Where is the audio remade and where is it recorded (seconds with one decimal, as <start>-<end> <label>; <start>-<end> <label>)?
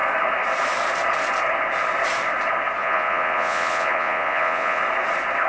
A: 0.0-2.8 recorded; 2.8-4.8 remade; 4.8-5.5 recorded